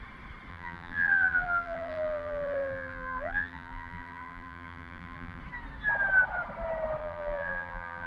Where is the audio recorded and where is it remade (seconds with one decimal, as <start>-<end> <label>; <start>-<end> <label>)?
0.0-0.5 recorded; 0.5-5.4 remade; 5.4-7.0 recorded; 7.0-8.1 remade